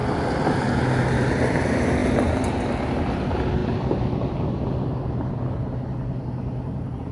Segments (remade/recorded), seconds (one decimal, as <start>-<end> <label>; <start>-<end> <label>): 0.0-7.1 recorded